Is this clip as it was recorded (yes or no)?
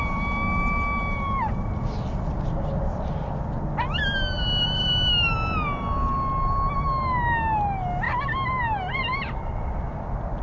yes